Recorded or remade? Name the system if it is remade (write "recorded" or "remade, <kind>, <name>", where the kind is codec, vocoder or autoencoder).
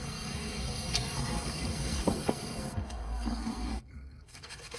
remade, codec, SNAC